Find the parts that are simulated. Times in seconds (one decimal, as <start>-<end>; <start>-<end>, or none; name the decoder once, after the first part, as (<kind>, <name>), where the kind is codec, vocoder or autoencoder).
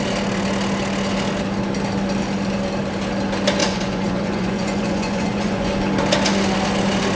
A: 3.6-5.7 (vocoder, Vocos)